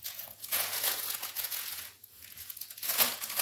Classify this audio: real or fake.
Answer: fake